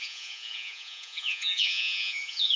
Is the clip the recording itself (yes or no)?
no